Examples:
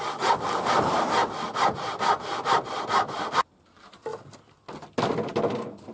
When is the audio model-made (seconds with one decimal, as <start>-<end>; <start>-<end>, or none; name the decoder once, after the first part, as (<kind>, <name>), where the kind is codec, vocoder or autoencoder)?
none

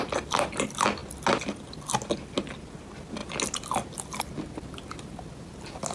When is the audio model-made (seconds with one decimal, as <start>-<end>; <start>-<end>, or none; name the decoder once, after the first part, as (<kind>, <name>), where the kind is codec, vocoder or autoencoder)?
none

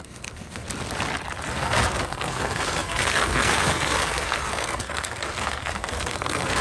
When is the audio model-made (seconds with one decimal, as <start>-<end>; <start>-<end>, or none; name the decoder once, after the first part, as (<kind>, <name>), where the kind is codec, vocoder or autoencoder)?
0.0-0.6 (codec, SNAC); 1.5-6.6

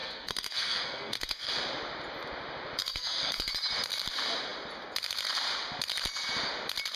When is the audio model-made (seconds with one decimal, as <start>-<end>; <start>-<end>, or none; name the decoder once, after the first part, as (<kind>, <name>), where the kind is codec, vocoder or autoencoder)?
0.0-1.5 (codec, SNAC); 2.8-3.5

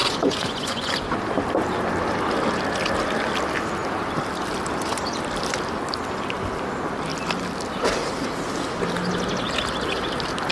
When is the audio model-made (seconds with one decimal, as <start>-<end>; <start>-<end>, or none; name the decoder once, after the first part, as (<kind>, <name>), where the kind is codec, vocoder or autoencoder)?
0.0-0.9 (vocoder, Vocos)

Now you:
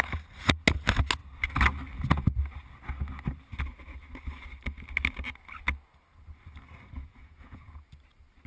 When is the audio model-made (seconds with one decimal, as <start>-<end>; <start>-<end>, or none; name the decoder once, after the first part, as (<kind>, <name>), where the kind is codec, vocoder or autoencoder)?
7.0-7.9 (vocoder, Vocos)

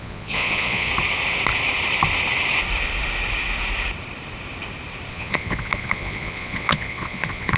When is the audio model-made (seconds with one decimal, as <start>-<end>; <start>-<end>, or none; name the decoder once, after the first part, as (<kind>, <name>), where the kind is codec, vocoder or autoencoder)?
0.0-0.9 (vocoder, Vocos); 5.1-7.6

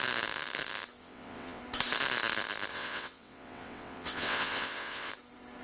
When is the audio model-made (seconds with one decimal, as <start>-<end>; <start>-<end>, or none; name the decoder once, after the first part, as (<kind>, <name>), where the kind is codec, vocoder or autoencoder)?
1.0-1.6 (vocoder, WaveNeXt); 2.7-5.1